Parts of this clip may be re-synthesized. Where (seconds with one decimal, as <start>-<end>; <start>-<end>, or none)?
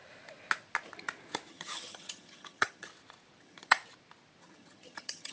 1.5-2.9; 3.4-3.8; 4.4-5.3